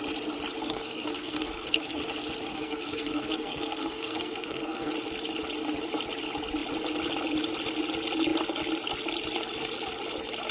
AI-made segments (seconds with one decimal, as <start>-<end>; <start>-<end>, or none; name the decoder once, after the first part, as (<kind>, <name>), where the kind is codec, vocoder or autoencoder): 0.6-2.0 (codec, SNAC); 2.5-4.9